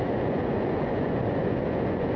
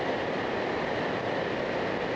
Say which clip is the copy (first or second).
first